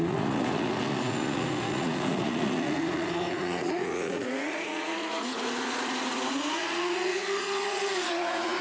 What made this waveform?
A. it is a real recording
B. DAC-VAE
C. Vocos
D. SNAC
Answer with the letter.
C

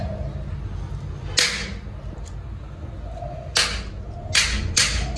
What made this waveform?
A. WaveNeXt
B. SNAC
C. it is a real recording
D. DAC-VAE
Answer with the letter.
C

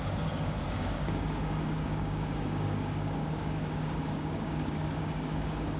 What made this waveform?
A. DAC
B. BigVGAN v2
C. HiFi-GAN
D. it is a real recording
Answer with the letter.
A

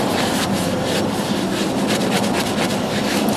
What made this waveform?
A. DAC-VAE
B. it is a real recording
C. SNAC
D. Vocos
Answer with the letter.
B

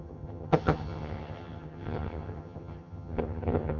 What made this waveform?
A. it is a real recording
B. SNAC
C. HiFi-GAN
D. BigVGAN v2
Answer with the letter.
C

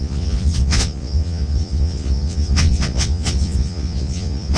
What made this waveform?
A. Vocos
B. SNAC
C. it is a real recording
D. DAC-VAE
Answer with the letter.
A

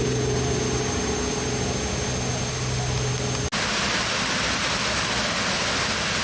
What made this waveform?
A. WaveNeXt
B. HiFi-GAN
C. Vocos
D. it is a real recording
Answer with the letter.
D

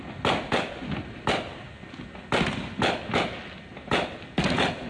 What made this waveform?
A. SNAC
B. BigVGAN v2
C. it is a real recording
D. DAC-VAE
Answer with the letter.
C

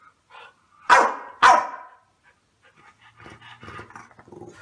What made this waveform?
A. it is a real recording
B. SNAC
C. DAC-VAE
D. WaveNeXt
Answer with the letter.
A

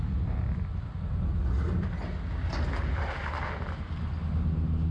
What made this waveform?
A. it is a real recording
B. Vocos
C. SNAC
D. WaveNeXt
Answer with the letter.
A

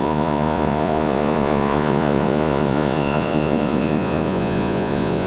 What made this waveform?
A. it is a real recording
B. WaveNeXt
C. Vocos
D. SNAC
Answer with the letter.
C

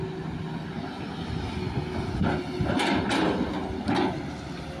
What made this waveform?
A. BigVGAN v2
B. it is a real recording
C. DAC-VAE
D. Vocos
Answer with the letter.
B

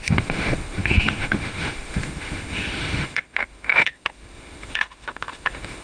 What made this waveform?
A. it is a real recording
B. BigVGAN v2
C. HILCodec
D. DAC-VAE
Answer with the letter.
D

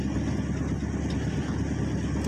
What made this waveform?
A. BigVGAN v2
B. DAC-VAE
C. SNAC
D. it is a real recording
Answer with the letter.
D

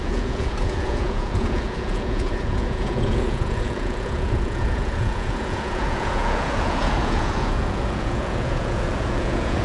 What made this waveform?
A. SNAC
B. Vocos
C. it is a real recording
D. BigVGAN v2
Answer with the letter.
B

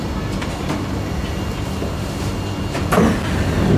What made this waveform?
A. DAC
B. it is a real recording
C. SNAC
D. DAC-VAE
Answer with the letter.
B